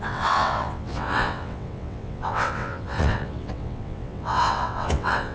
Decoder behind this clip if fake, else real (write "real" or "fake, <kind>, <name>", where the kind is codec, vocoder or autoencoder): fake, vocoder, WaveNeXt